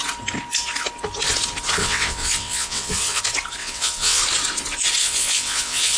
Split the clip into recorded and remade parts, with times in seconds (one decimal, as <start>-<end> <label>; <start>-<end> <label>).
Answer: 0.0-1.8 recorded; 1.8-3.2 remade; 3.2-3.6 recorded; 3.6-4.2 remade; 4.2-5.0 recorded; 5.0-6.0 remade